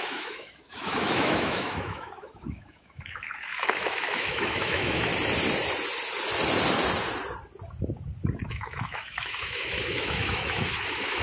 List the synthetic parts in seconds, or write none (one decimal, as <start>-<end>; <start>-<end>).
0.0-5.1; 8.5-11.2